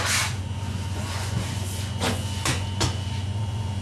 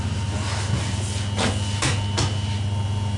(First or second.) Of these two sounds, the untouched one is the second